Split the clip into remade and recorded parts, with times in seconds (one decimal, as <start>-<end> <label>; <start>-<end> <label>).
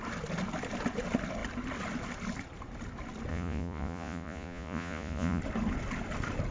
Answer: 0.0-3.3 recorded; 3.3-5.4 remade; 5.4-6.5 recorded